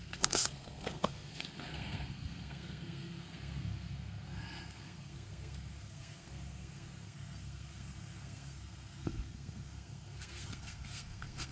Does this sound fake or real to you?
fake